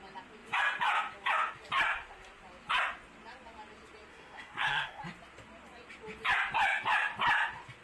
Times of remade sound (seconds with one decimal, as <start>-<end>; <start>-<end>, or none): 4.1-5.0